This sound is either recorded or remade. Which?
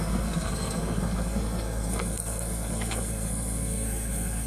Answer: remade